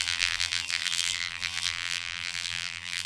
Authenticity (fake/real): fake